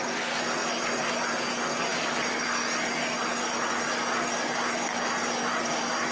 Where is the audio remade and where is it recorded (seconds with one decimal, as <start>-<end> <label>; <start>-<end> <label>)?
0.0-6.1 recorded